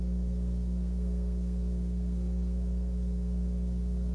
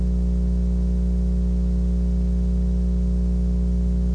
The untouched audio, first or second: second